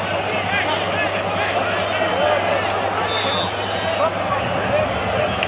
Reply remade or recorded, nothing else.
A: recorded